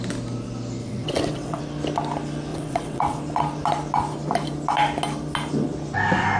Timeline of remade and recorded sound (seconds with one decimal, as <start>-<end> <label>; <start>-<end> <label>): 0.0-0.8 recorded; 0.8-1.6 remade; 1.6-2.5 recorded; 2.5-3.2 remade; 3.2-6.4 recorded